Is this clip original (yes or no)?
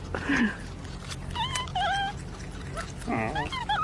yes